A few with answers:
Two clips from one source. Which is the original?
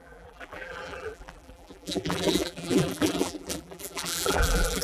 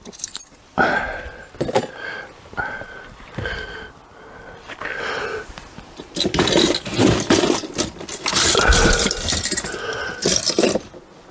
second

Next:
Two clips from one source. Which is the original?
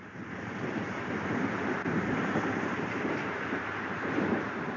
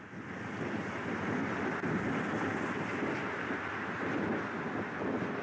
second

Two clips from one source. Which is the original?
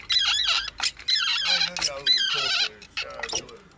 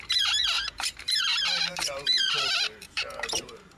first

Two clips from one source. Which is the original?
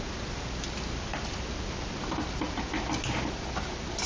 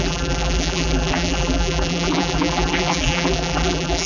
first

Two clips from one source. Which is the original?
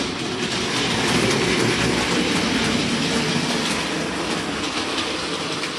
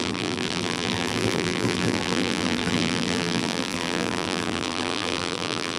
first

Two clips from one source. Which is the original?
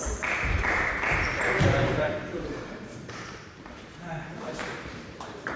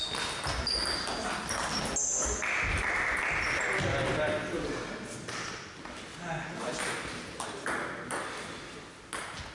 second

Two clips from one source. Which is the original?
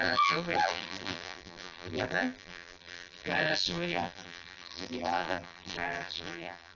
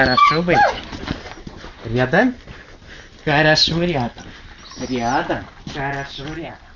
second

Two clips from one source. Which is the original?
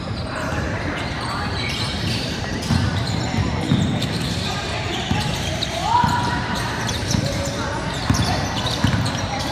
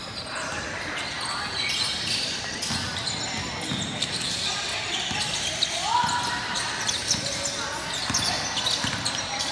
second